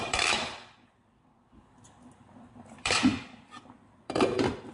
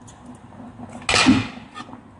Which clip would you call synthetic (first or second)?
first